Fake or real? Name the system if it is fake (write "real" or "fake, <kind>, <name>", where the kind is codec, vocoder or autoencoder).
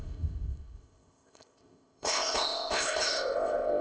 fake, codec, ZipCodec